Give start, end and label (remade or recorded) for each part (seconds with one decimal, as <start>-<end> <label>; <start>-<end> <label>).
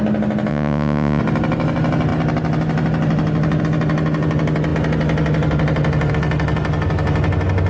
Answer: 0.0-0.5 recorded; 0.5-1.2 remade; 1.2-7.7 recorded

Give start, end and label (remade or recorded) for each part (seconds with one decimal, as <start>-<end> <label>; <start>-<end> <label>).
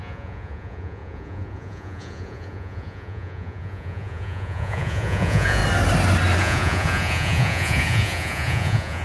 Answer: 0.0-5.6 remade; 5.6-6.4 recorded; 6.4-9.0 remade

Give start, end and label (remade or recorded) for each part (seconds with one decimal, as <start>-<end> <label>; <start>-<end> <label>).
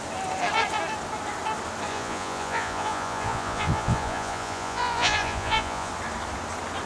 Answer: 0.0-1.9 recorded; 1.9-5.9 remade; 5.9-6.9 recorded